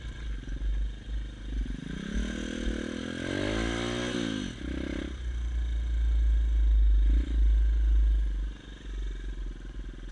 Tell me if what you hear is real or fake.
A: real